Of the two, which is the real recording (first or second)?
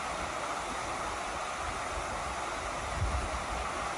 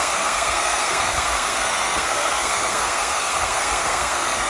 first